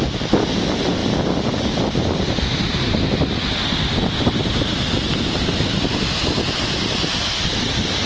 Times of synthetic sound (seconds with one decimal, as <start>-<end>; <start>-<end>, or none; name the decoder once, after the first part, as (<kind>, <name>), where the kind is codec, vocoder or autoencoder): 6.2-8.1 (vocoder, BigVGAN v2)